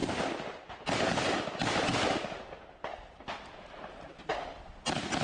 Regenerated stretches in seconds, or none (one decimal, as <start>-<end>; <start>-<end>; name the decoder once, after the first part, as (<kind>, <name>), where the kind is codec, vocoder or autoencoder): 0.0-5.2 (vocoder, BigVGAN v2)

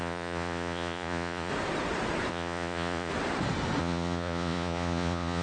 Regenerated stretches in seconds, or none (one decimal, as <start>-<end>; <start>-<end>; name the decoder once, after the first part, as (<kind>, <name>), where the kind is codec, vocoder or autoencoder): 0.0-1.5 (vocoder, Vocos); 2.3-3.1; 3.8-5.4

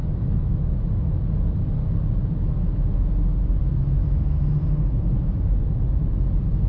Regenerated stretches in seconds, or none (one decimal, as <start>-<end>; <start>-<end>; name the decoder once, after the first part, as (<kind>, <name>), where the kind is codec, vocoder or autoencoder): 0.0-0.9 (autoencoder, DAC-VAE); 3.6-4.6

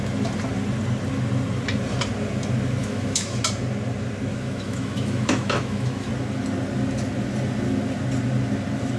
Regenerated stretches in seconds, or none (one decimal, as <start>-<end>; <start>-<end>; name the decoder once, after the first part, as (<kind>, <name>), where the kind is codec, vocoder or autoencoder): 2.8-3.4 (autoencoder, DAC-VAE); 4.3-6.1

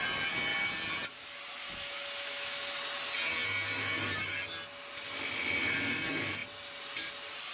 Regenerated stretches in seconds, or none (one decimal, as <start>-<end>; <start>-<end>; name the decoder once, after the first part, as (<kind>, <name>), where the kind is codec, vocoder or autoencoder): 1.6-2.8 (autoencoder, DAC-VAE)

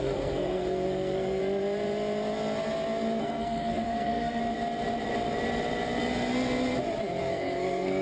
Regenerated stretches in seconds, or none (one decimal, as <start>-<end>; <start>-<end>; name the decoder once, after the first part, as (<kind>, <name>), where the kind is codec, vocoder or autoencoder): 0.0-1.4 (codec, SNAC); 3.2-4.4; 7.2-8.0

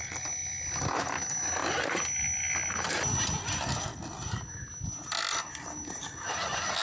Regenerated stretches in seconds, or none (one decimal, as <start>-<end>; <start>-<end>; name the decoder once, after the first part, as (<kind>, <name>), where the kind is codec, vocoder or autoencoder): none

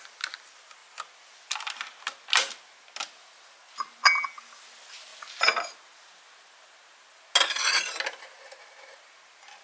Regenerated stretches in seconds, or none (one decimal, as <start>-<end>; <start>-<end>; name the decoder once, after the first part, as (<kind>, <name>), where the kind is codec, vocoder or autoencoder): none